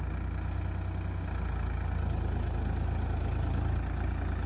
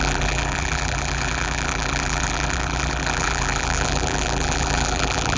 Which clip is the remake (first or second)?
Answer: second